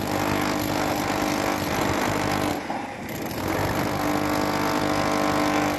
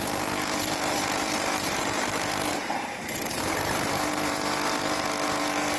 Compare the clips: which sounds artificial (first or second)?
second